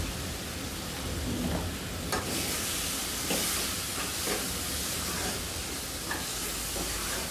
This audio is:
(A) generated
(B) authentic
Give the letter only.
B